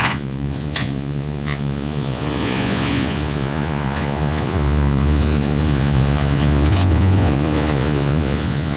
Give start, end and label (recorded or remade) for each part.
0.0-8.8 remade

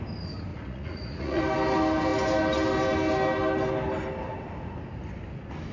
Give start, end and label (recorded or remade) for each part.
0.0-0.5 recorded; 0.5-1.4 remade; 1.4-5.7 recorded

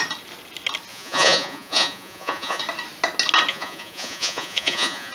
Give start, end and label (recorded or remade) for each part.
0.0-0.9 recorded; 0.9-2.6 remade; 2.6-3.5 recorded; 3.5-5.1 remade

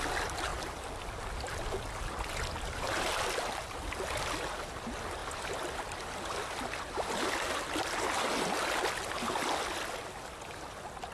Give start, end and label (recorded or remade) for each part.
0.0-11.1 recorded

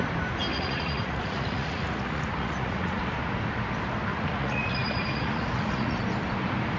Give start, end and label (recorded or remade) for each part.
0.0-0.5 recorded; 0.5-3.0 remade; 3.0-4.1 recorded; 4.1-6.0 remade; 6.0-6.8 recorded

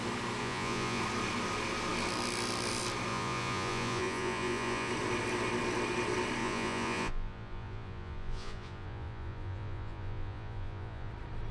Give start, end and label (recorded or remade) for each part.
0.0-0.4 recorded; 0.4-1.0 remade; 1.0-3.1 recorded; 3.1-4.9 remade; 4.9-6.4 recorded; 6.4-11.1 remade; 11.1-11.5 recorded